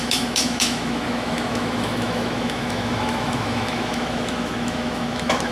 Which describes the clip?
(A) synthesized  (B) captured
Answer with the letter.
A